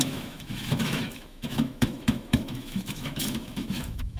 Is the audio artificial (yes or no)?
yes